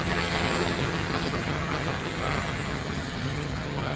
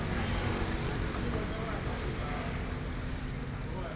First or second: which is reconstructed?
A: first